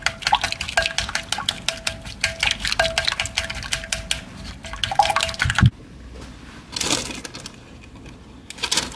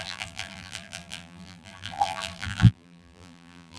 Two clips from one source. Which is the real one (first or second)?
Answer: first